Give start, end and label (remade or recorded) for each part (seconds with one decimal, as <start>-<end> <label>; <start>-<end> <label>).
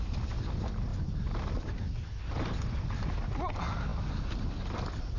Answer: 0.0-5.2 recorded